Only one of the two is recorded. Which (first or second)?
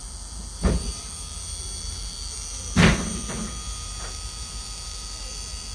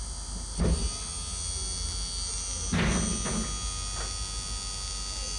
second